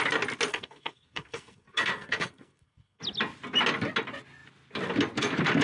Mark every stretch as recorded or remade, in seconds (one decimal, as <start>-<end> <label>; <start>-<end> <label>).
0.0-0.5 recorded; 0.5-3.0 remade; 3.0-5.6 recorded